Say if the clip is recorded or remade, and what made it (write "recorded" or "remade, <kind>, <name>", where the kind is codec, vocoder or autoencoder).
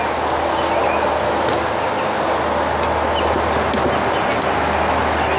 recorded